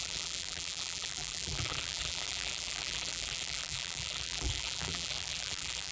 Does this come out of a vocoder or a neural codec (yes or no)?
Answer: yes